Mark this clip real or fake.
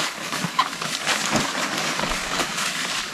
fake